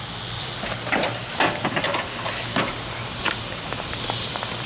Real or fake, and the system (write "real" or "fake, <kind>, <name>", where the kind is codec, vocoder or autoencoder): real